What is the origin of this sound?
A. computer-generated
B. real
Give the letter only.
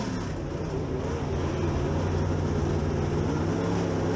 B